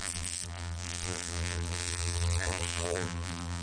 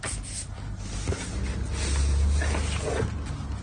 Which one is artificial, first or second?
first